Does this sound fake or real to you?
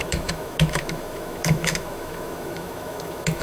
fake